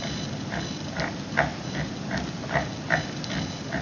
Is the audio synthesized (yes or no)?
no